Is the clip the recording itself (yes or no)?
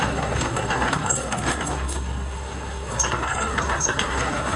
no